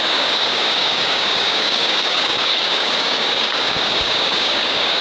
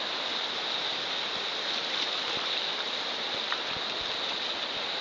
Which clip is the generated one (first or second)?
first